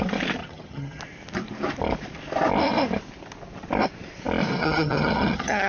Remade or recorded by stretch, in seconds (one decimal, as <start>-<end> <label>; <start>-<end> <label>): 0.0-0.4 recorded; 0.4-1.0 remade; 1.0-4.6 recorded; 4.6-5.7 remade